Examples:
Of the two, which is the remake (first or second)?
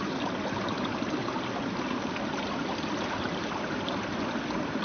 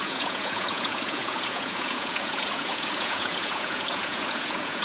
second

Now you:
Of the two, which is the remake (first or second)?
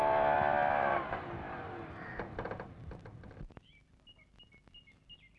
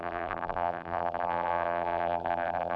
second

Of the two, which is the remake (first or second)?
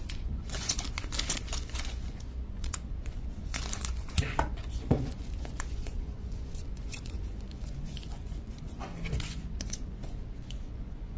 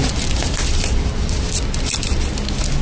first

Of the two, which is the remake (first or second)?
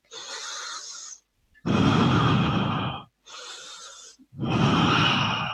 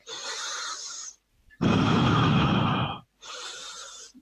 second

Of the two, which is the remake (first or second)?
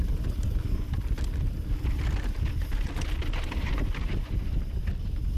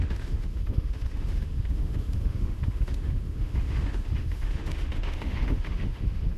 second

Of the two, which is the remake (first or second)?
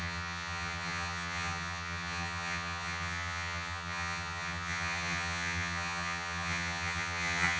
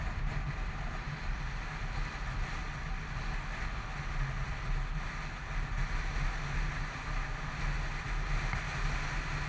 first